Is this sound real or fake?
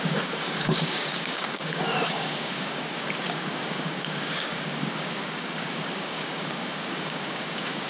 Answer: fake